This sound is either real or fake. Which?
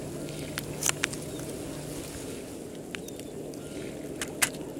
real